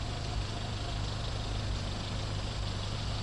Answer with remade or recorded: recorded